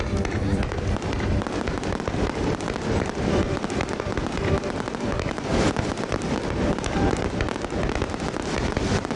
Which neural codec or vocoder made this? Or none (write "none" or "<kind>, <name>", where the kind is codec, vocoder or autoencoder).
vocoder, BigVGAN v2